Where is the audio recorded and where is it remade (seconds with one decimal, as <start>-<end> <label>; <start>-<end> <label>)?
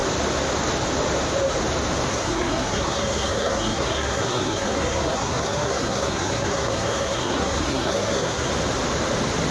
0.0-2.1 recorded; 2.1-8.5 remade; 8.5-9.5 recorded